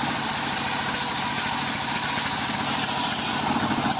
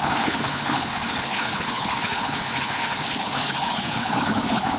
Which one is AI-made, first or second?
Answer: second